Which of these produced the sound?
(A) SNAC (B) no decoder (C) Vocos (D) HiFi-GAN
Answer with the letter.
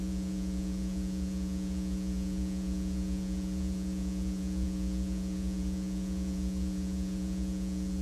C